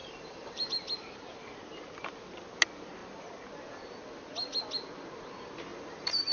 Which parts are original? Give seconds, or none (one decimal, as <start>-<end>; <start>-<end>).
0.7-5.7